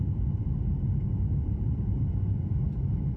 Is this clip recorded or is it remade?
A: recorded